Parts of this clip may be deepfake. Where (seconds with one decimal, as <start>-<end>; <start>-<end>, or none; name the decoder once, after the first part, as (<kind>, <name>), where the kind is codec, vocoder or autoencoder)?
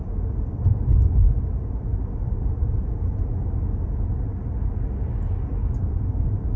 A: none